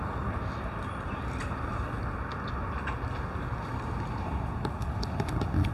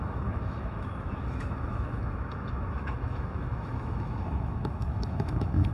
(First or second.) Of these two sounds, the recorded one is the first